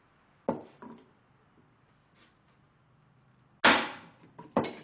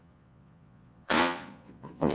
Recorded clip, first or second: first